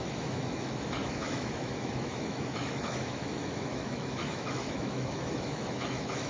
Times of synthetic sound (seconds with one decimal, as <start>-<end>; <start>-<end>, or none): 0.0-6.3